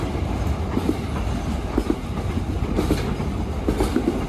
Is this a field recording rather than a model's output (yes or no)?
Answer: yes